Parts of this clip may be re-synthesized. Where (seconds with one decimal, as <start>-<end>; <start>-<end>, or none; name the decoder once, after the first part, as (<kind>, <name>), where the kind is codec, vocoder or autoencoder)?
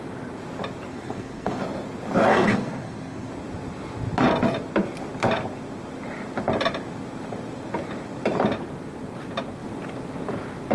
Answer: 0.9-1.6 (codec, SNAC); 2.3-3.3